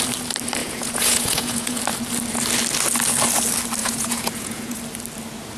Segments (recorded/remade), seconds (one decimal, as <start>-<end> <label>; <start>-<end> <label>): 0.0-0.6 recorded; 0.6-1.8 remade; 1.8-3.8 recorded; 3.8-4.8 remade; 4.8-5.6 recorded